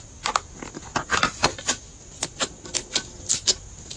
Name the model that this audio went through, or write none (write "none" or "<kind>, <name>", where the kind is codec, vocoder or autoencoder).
none